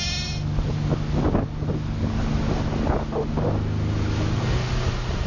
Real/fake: real